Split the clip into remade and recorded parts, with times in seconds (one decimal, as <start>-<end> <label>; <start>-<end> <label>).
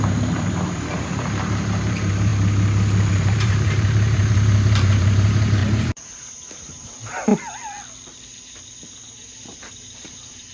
0.0-2.3 remade; 2.3-3.1 recorded; 3.1-7.3 remade; 7.3-9.4 recorded; 9.4-10.5 remade